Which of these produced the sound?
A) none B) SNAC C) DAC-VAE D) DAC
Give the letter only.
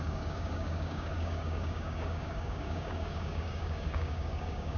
D